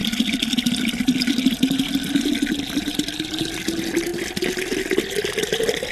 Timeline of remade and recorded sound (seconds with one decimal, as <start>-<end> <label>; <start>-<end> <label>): 0.0-3.5 remade; 3.5-5.9 recorded